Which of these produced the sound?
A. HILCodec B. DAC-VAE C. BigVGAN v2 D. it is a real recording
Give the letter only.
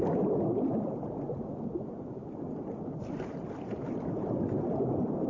D